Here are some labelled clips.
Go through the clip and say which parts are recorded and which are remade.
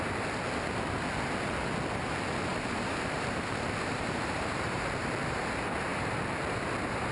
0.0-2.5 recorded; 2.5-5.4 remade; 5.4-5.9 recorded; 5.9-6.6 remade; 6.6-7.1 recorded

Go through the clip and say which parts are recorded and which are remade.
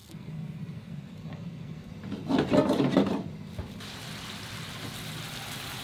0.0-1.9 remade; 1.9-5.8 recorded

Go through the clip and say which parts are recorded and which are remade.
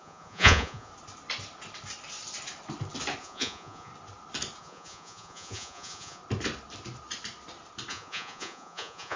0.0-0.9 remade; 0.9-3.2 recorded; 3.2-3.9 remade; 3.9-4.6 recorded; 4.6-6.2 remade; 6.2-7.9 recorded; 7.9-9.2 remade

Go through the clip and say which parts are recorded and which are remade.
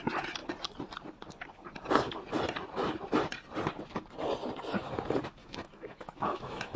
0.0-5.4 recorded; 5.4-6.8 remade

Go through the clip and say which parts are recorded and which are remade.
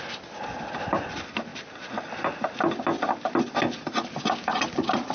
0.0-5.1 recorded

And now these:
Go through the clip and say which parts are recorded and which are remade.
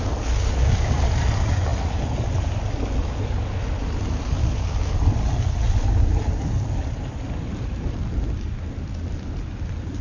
0.0-10.0 recorded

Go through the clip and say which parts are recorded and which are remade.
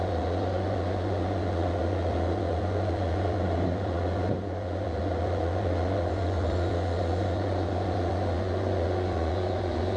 0.0-10.0 remade